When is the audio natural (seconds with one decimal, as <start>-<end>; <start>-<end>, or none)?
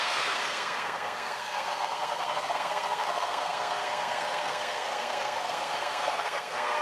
none